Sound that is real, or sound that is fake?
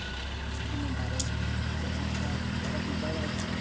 real